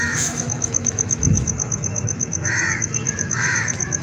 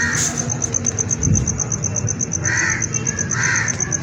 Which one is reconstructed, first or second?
first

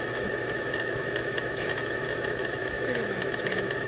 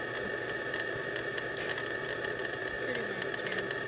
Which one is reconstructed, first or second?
first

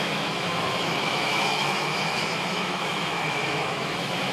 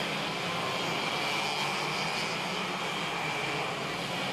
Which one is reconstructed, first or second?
first